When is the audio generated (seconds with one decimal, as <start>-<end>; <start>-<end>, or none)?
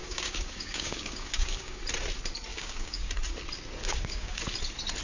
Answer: 0.0-1.8; 2.5-3.1; 3.8-4.4